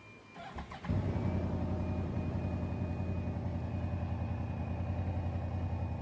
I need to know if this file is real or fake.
real